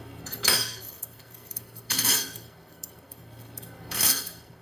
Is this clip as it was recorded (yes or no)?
no